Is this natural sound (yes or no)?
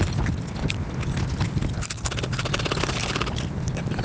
yes